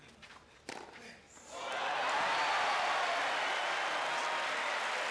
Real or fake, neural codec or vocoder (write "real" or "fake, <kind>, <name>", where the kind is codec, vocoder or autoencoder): real